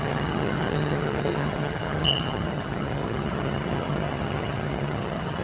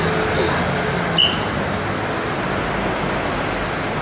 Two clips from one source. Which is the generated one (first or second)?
first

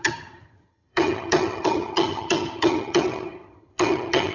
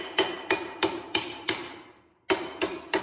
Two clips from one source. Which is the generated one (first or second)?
first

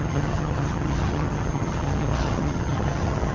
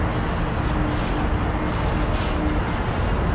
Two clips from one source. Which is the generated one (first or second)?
first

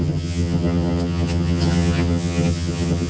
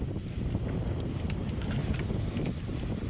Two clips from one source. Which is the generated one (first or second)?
first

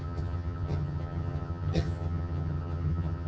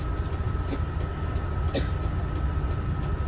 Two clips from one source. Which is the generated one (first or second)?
first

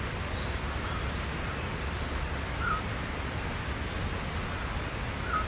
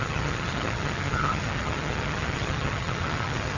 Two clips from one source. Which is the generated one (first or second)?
second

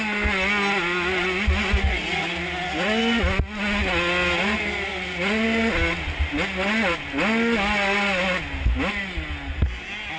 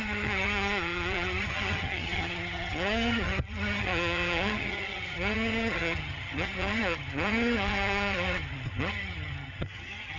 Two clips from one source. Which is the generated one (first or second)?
second